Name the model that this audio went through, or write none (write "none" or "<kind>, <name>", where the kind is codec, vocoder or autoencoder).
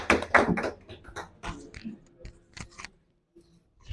none